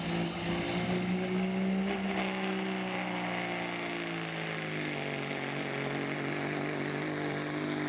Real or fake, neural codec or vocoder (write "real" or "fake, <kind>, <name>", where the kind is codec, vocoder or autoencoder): real